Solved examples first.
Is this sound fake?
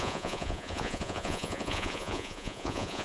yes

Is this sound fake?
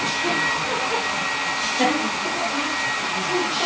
no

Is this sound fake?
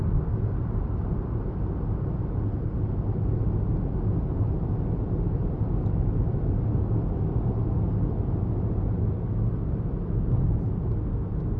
no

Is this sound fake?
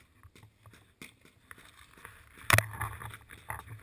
no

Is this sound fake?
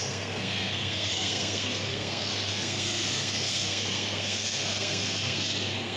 yes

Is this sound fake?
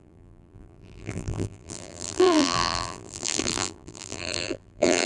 yes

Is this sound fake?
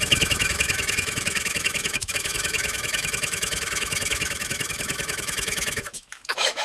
yes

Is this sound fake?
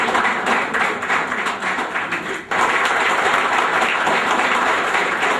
yes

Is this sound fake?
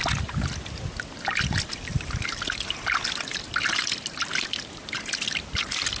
no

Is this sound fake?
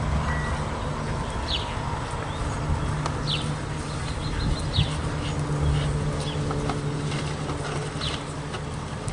no